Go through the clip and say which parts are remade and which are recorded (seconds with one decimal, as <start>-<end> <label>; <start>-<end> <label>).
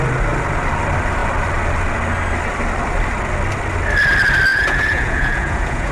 0.0-4.5 recorded; 4.5-5.9 remade